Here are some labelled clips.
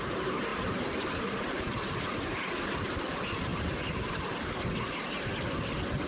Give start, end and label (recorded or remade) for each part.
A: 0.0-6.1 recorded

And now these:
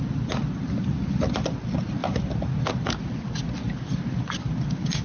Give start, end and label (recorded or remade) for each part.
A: 0.0-5.0 recorded

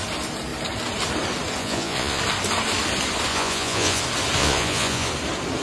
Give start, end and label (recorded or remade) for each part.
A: 0.0-1.6 recorded; 1.6-2.2 remade; 2.2-3.3 recorded; 3.3-4.0 remade; 4.0-4.4 recorded; 4.4-5.1 remade; 5.1-5.6 recorded

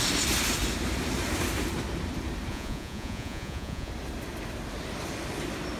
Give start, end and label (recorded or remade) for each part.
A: 0.0-2.5 recorded; 2.5-3.9 remade; 3.9-5.8 recorded

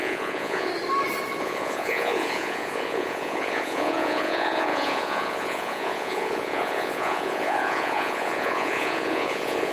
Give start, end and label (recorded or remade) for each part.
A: 0.0-0.7 remade; 0.7-1.4 recorded; 1.4-9.7 remade

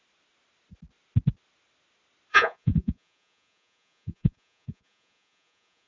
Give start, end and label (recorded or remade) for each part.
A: 0.0-2.3 recorded; 2.3-5.9 remade

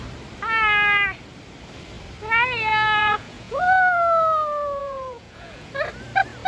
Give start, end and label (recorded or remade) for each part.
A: 0.0-3.0 recorded; 3.0-3.6 remade; 3.6-4.8 recorded; 4.8-5.7 remade; 5.7-6.5 recorded